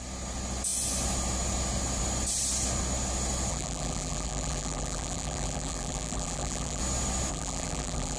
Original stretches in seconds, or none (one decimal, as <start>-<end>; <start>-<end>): 0.0-3.5; 6.8-7.3

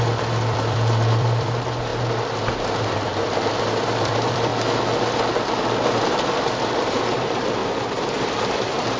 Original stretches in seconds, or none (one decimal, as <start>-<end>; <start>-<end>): 1.9-2.8; 4.5-6.0; 7.6-9.0

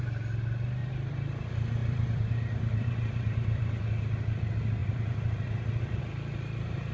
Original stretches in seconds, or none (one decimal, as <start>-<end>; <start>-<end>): 0.0-0.8; 1.4-1.8; 3.8-4.8; 6.0-6.9

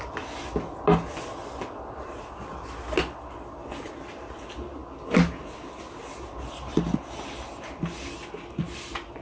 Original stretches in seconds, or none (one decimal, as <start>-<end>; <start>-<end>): 0.0-9.2

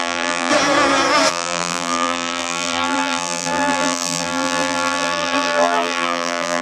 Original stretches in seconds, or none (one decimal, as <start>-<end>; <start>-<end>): 0.5-1.3

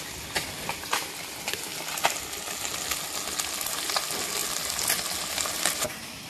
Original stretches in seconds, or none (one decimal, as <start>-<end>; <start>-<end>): 1.7-3.7; 4.4-5.2

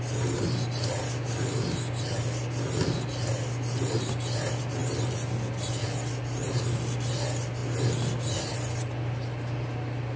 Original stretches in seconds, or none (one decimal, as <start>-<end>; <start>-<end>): 0.0-10.2

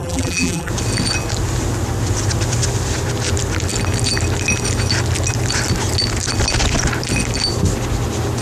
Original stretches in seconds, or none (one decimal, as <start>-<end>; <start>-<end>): 0.7-8.4